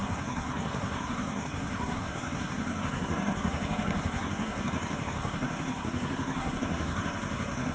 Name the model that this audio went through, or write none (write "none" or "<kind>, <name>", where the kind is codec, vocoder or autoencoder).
codec, SNAC